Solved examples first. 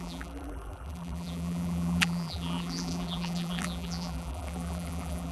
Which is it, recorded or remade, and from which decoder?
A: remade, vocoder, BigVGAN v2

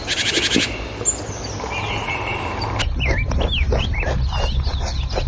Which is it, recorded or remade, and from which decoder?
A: recorded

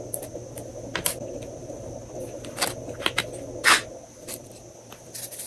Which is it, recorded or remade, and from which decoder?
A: recorded